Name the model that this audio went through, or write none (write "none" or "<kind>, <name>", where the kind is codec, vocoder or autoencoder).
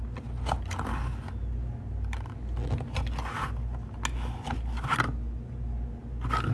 none